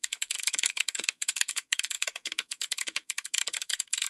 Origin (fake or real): fake